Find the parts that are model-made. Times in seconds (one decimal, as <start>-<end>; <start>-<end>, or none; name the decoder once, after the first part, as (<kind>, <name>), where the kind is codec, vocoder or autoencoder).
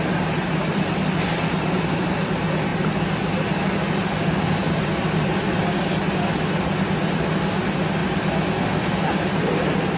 0.7-1.5 (vocoder, BigVGAN v2)